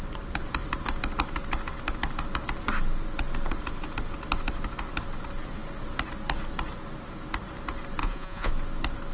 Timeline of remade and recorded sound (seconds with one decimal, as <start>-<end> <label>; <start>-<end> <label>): 0.0-8.0 recorded; 8.0-8.5 remade; 8.5-9.1 recorded